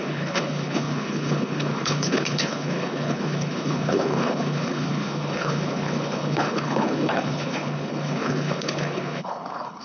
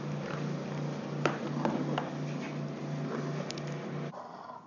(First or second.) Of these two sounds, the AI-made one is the first